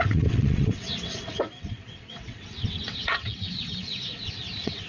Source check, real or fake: fake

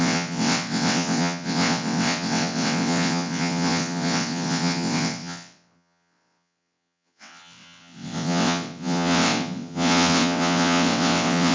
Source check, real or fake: fake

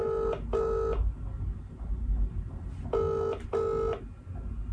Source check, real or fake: real